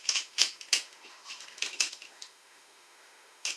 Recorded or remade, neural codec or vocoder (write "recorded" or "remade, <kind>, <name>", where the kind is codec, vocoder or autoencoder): remade, autoencoder, DAC-VAE